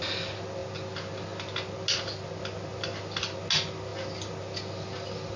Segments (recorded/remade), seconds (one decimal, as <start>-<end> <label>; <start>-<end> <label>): 0.0-5.4 recorded